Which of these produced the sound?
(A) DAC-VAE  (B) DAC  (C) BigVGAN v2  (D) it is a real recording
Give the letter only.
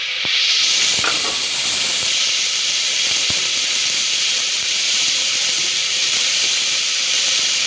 C